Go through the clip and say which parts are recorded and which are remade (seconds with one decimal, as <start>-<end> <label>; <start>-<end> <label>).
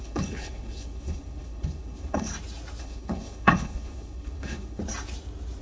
0.0-2.3 remade; 2.3-2.8 recorded; 2.8-4.8 remade; 4.8-5.6 recorded